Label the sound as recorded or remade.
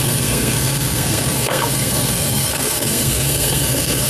remade